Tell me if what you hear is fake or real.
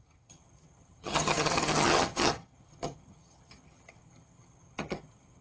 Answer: fake